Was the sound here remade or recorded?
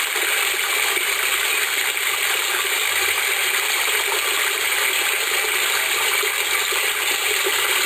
remade